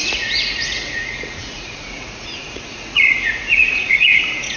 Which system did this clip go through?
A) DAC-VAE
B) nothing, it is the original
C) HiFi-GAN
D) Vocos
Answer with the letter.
D